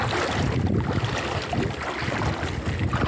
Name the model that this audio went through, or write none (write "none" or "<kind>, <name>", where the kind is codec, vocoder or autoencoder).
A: none